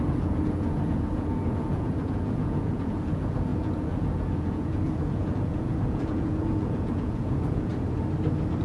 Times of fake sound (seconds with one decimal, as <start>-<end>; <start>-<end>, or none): 0.0-7.7